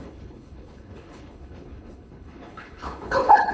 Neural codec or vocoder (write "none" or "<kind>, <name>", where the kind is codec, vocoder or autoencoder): codec, HILCodec